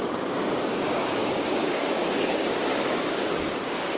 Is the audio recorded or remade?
remade